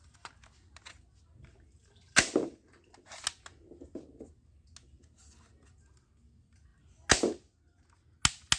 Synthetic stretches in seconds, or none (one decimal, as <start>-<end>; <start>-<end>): none